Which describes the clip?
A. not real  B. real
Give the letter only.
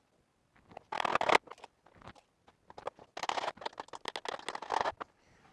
B